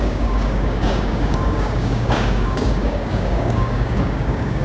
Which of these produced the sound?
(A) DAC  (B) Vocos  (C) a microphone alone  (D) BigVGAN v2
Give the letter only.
A